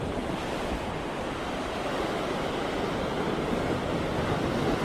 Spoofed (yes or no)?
no